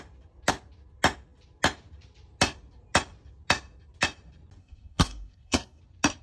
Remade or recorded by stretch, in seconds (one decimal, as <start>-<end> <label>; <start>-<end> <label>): 0.0-4.6 recorded; 4.6-5.8 remade; 5.8-6.2 recorded